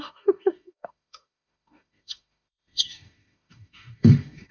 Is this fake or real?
fake